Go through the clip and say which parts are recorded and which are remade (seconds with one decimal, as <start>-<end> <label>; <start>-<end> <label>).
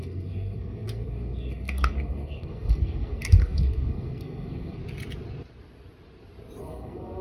0.0-4.8 remade; 4.8-6.6 recorded; 6.6-7.2 remade